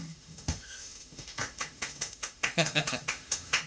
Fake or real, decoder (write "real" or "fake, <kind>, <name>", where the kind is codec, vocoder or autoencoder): fake, autoencoder, DAC-VAE